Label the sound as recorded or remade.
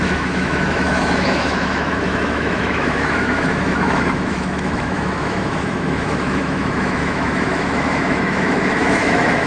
remade